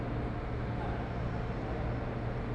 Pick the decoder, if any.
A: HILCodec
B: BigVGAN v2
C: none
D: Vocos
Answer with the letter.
C